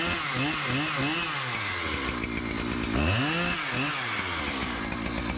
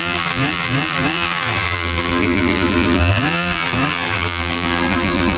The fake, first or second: second